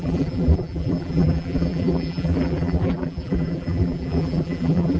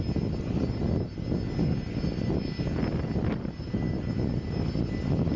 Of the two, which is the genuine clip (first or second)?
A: second